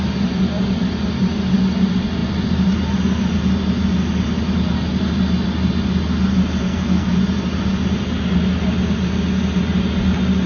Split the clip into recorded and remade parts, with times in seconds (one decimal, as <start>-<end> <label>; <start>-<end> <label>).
0.0-6.6 recorded; 6.6-7.1 remade; 7.1-10.5 recorded

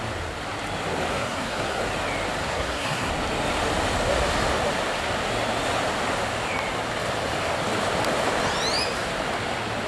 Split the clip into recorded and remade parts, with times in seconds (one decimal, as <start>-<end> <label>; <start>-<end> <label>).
0.0-1.1 recorded; 1.1-1.8 remade; 1.8-2.4 recorded; 2.4-3.1 remade; 3.1-9.9 recorded

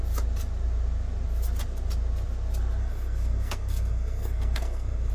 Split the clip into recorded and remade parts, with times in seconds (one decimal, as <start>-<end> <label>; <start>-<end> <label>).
0.0-2.8 recorded; 2.8-5.1 remade

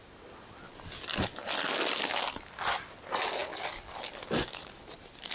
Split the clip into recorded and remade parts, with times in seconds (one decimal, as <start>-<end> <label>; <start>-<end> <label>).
0.0-5.3 recorded